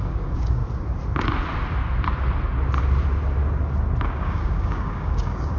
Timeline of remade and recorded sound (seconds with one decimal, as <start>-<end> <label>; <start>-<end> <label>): 0.0-0.6 remade; 0.6-4.0 recorded; 4.0-5.6 remade